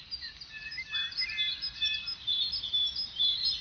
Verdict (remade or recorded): remade